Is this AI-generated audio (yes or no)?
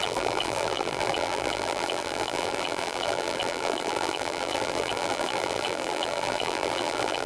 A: yes